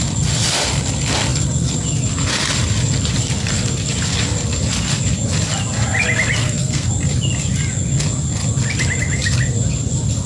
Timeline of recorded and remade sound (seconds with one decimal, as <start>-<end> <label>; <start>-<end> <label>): 0.0-6.4 recorded; 6.4-6.9 remade; 6.9-10.3 recorded